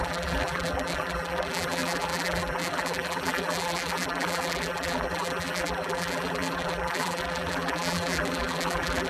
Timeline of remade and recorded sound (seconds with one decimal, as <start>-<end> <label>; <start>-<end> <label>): 0.0-9.1 remade